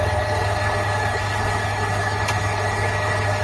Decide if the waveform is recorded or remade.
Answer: remade